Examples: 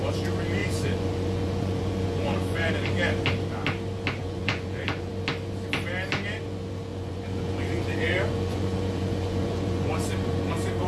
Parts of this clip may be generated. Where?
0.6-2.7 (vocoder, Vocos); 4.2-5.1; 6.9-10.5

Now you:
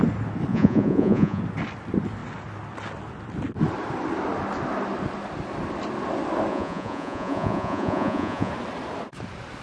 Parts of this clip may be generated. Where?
0.5-1.4 (vocoder, Vocos); 6.5-8.5

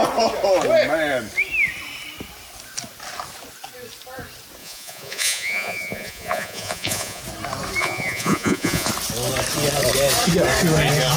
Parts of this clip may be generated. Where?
4.6-7.2 (vocoder, Vocos); 7.8-8.9

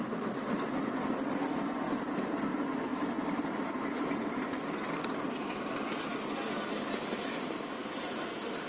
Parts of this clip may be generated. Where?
none

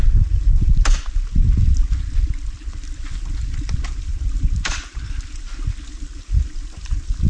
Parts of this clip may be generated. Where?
none

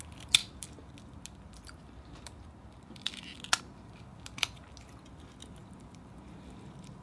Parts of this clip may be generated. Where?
none

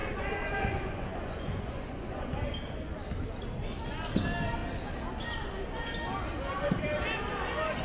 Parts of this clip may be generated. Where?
0.0-2.3 (vocoder, Vocos)

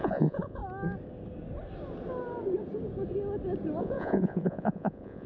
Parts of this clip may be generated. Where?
0.0-0.6 (vocoder, Vocos); 3.8-5.3